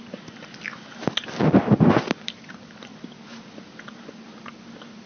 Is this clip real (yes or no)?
yes